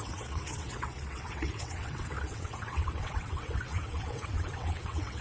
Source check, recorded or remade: remade